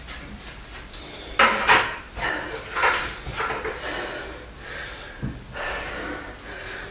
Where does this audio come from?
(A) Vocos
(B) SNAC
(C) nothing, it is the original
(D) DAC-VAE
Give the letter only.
C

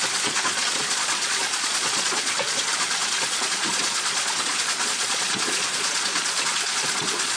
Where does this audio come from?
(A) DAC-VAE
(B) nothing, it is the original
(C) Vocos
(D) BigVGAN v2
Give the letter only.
C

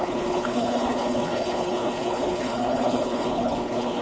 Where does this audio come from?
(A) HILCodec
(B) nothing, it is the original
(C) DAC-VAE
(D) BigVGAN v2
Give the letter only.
A